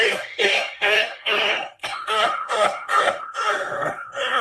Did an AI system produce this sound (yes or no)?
yes